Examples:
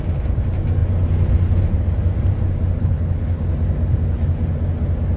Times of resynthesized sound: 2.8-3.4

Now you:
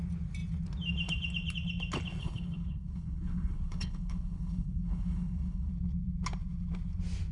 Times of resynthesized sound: 2.2-5.7

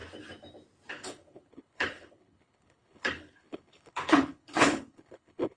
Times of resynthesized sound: 0.9-5.6

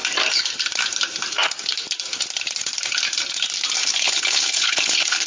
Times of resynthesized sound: 3.8-5.3

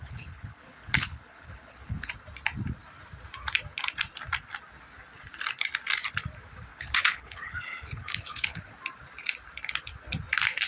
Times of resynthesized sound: 0.0-2.1; 6.7-8.6

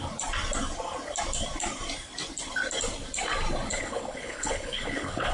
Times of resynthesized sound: 3.7-5.3

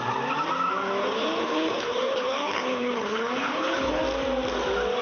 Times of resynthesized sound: 1.0-4.0